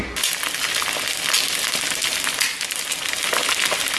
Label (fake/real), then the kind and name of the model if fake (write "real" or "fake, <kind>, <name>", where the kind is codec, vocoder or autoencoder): real